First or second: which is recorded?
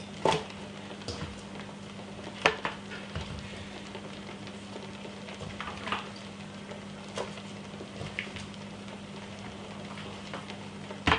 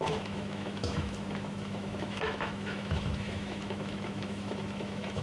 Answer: first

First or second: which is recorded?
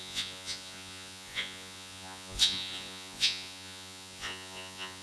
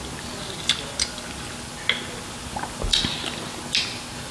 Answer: second